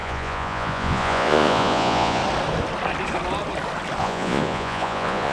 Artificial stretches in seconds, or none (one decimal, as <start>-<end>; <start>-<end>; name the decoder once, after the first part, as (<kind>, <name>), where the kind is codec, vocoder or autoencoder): 0.0-2.2 (vocoder, Vocos); 4.0-5.3